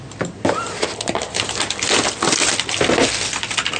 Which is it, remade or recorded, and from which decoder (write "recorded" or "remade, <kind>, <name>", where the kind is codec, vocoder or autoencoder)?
recorded